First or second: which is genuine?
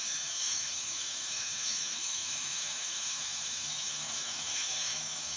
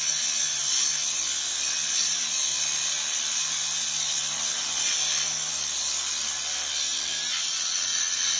second